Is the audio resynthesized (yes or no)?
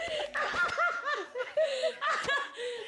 no